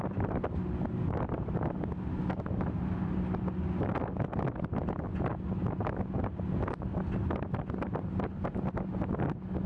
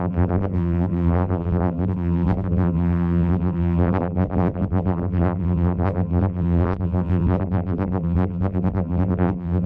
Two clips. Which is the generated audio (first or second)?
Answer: second